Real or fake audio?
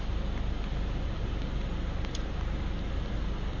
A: real